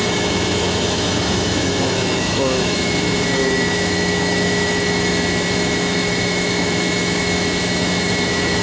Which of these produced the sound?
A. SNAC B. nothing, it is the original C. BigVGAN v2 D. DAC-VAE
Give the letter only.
D